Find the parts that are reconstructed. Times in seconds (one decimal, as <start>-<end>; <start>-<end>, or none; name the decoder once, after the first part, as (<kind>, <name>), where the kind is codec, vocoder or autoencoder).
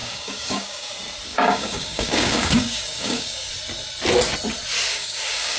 0.0-0.9 (codec, DAC); 1.3-3.5; 4.9-5.6